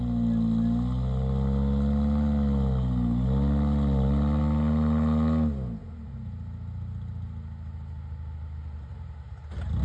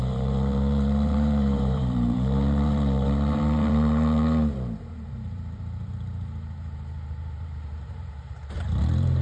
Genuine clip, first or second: first